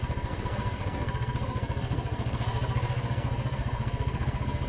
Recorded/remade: remade